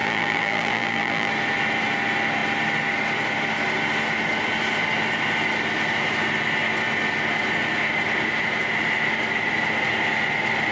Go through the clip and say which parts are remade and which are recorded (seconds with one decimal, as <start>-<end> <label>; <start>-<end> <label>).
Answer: 0.0-1.3 remade; 1.3-10.7 recorded